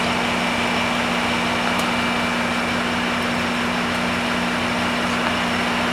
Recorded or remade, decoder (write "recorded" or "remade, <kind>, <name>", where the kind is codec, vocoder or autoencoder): recorded